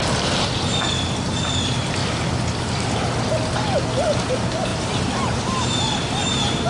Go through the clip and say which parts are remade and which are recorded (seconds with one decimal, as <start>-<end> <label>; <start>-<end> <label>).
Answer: 0.0-4.7 recorded; 4.7-6.7 remade